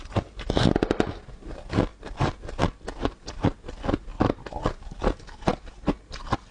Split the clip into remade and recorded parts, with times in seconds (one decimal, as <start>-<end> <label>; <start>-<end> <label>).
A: 0.0-4.1 recorded; 4.1-4.8 remade; 4.8-6.5 recorded